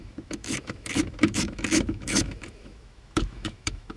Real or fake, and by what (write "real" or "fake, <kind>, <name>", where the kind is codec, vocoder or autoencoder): fake, autoencoder, DAC-VAE